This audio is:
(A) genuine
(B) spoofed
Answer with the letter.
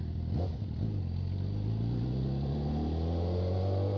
A